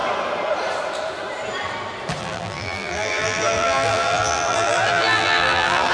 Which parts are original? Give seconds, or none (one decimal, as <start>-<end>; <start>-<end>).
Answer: 0.0-2.2